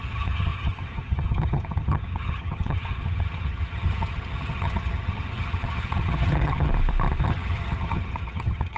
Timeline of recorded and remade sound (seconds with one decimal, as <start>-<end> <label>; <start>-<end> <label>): 0.0-6.7 remade; 6.7-7.2 recorded; 7.2-8.8 remade